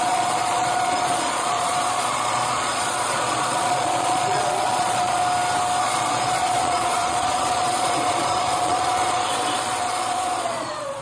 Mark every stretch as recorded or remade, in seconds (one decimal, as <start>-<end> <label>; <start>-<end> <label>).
0.0-5.2 remade; 5.2-5.8 recorded; 5.8-11.0 remade